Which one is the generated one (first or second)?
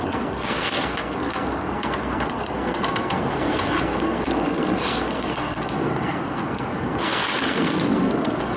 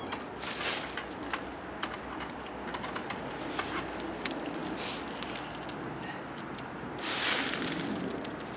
first